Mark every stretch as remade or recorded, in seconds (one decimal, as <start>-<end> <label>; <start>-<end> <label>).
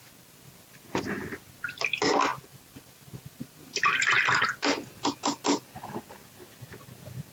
0.0-7.3 recorded